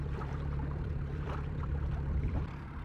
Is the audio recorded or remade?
remade